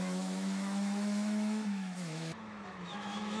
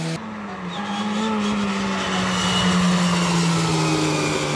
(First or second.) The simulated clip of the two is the first